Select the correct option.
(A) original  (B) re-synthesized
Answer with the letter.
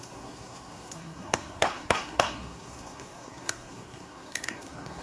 B